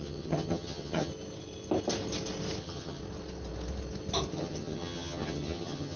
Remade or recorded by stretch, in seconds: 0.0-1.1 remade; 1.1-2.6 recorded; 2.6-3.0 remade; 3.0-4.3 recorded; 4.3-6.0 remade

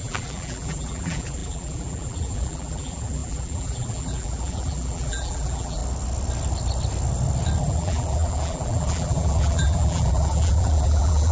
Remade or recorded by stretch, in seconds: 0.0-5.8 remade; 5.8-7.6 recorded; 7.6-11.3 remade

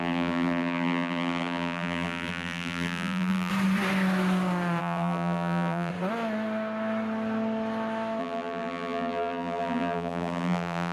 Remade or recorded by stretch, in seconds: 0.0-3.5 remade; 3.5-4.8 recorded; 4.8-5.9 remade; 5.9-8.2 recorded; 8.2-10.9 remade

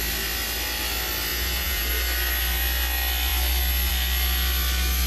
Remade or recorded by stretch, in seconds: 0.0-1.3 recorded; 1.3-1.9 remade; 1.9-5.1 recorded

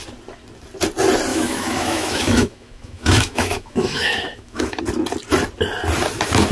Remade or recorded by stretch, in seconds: 0.0-1.3 recorded; 1.3-4.8 remade; 4.8-6.5 recorded

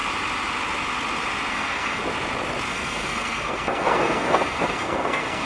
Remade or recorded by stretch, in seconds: 0.0-1.5 recorded; 1.5-2.0 remade; 2.0-2.7 recorded; 2.7-5.5 remade